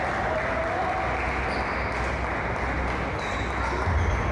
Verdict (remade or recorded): recorded